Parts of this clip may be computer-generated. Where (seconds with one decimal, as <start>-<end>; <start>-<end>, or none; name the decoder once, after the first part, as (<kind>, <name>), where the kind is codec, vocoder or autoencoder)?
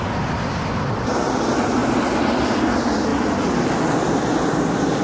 3.1-3.9 (vocoder, BigVGAN v2)